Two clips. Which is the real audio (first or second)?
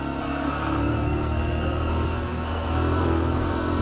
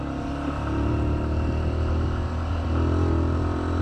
second